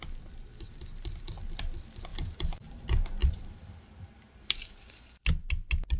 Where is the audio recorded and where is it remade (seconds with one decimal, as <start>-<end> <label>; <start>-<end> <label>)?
0.0-2.1 recorded; 2.1-2.8 remade; 2.8-3.2 recorded; 3.2-5.2 remade; 5.2-6.0 recorded

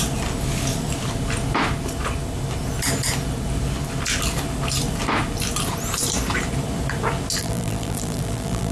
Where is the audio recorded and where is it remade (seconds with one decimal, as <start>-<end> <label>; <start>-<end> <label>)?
0.0-7.4 recorded; 7.4-8.7 remade

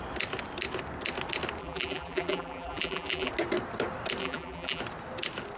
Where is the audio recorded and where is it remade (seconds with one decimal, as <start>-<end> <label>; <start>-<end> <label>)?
0.0-1.6 recorded; 1.6-3.3 remade; 3.3-4.2 recorded; 4.2-4.8 remade; 4.8-5.6 recorded